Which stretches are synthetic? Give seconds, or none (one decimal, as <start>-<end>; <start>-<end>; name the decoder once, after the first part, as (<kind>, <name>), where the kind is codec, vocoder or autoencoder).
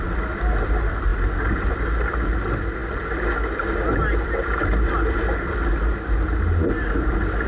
none